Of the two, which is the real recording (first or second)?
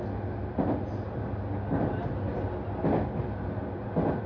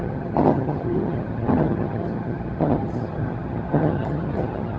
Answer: first